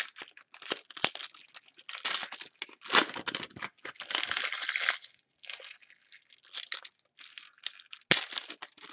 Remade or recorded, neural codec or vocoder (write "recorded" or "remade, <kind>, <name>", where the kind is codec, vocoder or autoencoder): recorded